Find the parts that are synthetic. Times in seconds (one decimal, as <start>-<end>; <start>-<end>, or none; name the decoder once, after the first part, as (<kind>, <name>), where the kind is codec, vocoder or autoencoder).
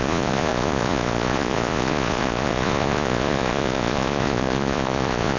0.0-5.4 (vocoder, Vocos)